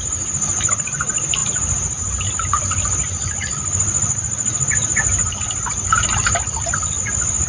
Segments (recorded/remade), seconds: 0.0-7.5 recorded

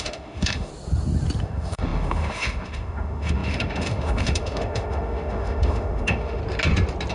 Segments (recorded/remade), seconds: 0.0-0.7 remade; 0.7-1.4 recorded; 1.4-6.4 remade; 6.4-7.1 recorded

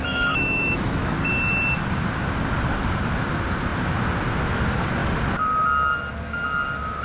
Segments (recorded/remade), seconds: 0.0-1.2 remade; 1.2-7.0 recorded

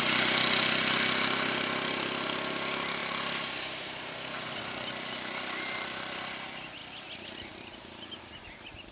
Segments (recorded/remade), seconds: 0.0-8.9 recorded

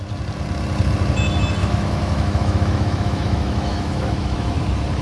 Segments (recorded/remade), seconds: 0.0-1.6 recorded; 1.6-4.6 remade; 4.6-5.0 recorded

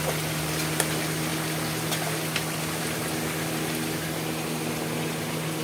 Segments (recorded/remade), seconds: 0.0-5.6 recorded

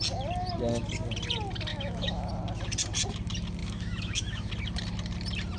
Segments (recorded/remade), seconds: 0.0-1.7 recorded; 1.7-2.3 remade; 2.3-3.6 recorded; 3.6-4.5 remade; 4.5-5.6 recorded

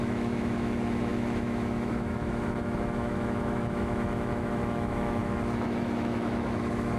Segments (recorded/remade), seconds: 0.0-7.0 remade